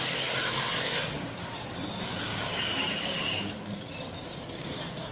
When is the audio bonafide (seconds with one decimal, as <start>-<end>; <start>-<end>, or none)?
0.0-0.4; 1.7-2.3; 3.5-4.2